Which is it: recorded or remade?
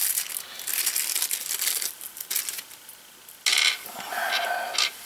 recorded